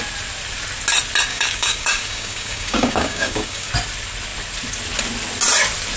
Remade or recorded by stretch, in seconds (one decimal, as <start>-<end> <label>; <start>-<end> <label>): 0.0-1.3 recorded; 1.3-3.7 remade; 3.7-6.0 recorded